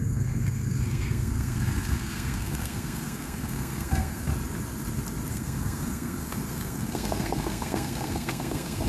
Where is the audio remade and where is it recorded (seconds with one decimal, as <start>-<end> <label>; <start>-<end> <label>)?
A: 0.0-4.3 remade; 4.3-5.3 recorded; 5.3-8.9 remade